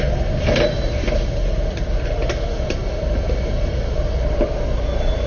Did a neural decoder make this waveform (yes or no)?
no